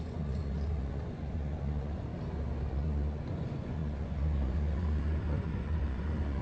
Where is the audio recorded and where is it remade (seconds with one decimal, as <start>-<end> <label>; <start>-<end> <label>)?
0.0-2.1 remade; 2.1-2.7 recorded; 2.7-6.4 remade